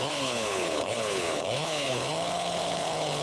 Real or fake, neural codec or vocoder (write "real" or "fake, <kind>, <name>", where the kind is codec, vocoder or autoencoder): fake, codec, HILCodec